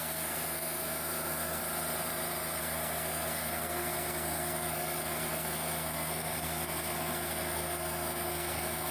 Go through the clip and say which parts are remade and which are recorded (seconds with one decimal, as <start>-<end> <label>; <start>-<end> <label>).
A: 0.0-1.6 remade; 1.6-2.6 recorded; 2.6-8.9 remade